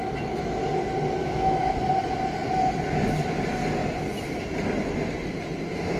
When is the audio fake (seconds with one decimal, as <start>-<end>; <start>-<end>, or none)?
1.2-1.8